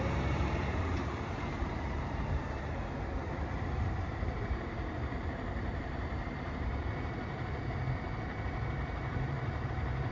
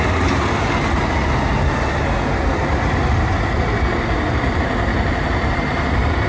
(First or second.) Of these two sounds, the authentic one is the second